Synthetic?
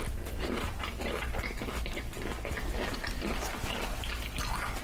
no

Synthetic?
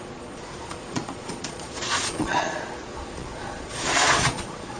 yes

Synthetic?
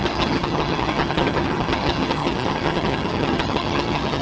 yes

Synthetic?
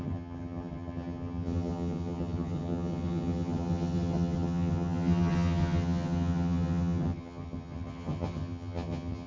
yes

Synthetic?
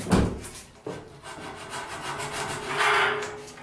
no